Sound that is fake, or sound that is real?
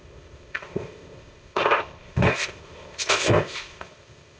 fake